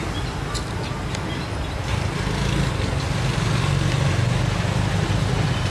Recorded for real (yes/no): yes